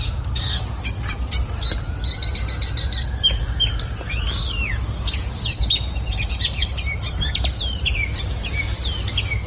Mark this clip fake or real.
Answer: real